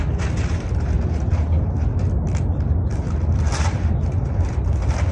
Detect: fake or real real